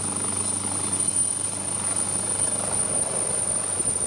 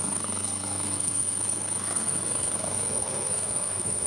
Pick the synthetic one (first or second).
second